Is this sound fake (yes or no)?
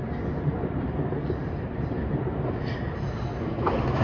no